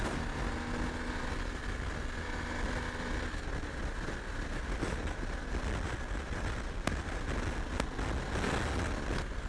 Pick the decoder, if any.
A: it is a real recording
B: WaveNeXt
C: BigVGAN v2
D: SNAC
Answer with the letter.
A